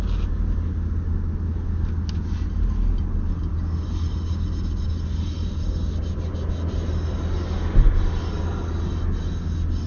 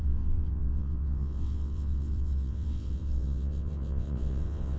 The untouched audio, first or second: first